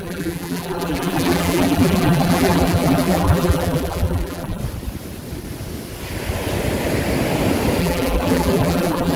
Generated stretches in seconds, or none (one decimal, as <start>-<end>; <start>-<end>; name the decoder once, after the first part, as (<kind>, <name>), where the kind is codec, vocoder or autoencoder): 0.0-4.6 (vocoder, BigVGAN v2); 7.8-9.2

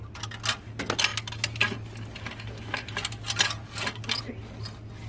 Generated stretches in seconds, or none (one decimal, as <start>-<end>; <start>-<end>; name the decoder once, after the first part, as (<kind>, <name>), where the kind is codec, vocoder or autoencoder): none

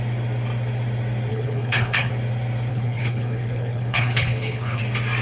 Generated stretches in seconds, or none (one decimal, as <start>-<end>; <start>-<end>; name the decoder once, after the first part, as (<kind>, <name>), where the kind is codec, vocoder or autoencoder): 1.3-2.1 (codec, HILCodec); 2.7-4.8

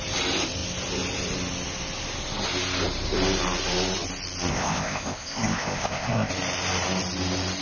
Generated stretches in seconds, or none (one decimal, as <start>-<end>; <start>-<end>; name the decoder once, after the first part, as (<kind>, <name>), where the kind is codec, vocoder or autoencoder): 4.5-6.3 (codec, ZipCodec)

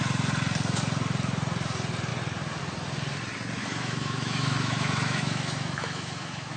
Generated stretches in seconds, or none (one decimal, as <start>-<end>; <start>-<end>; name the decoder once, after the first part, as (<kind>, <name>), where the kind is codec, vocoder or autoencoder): 3.6-6.6 (autoencoder, DAC-VAE)

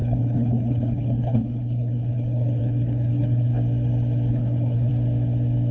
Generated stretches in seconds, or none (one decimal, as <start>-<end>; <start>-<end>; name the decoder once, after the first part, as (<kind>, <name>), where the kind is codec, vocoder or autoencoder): 0.0-3.5 (codec, HILCodec); 4.3-4.9

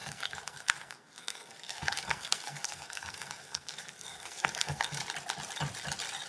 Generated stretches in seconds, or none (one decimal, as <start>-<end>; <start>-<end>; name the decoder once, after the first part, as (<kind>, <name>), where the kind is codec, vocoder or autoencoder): 0.0-5.0 (codec, SNAC)

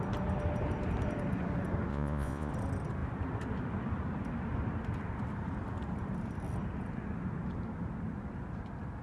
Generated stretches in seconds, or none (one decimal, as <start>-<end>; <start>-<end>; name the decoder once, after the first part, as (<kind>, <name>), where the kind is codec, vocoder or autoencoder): 1.9-2.5 (vocoder, Vocos)